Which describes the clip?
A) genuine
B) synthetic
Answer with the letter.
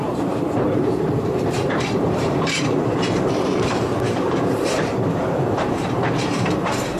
B